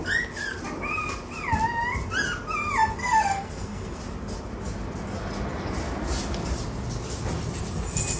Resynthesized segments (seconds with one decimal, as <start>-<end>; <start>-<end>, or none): 3.0-4.0